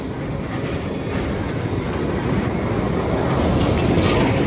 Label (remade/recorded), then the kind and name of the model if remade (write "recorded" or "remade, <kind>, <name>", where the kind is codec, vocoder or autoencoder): recorded